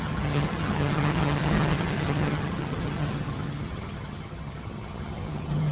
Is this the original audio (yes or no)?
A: no